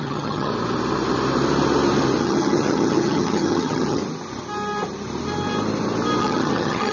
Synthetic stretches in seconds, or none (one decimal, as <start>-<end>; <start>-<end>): 0.0-0.5; 2.2-4.0; 6.2-6.9